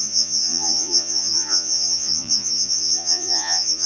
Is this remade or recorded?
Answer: remade